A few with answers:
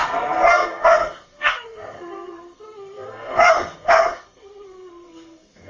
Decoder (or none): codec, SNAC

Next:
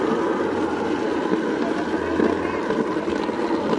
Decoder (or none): none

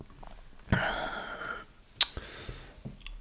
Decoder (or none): none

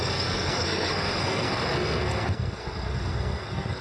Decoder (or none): codec, SNAC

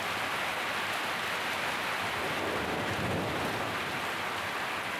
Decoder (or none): none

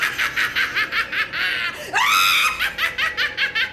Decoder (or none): none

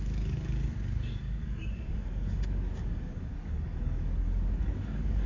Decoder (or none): codec, DAC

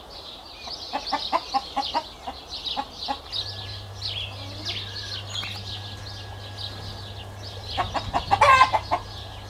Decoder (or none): none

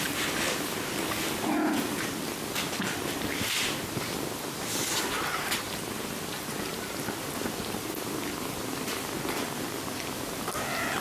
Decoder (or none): none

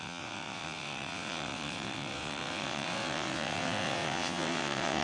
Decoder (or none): vocoder, WaveNeXt